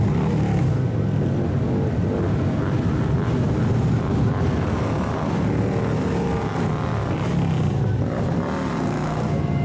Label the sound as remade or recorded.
recorded